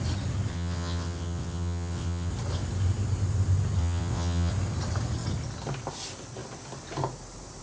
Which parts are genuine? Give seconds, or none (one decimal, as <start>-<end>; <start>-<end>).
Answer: 0.0-0.5; 2.3-3.8; 4.5-7.6